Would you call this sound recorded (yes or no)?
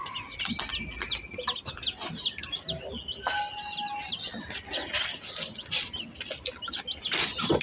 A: yes